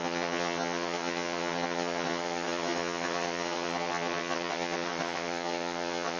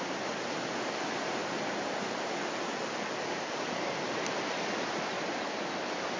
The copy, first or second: first